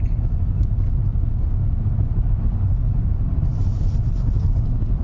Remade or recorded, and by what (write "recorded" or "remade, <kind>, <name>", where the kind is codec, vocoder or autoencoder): recorded